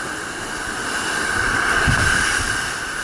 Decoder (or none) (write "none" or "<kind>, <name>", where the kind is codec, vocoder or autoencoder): none